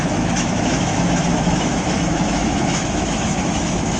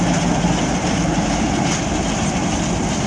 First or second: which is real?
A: second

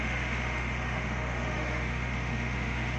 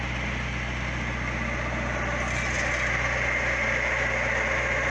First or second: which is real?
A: second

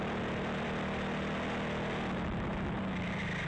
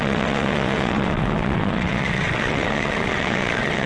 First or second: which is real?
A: first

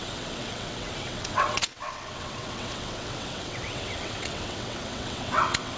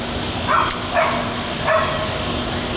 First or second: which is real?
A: second